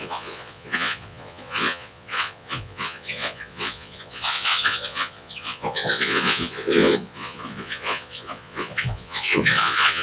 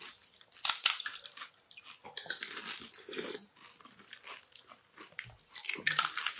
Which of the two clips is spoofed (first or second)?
first